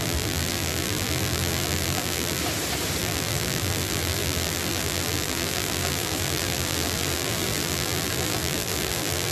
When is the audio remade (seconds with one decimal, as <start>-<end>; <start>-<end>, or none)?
0.0-2.4; 3.0-9.3